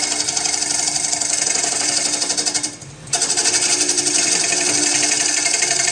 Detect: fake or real real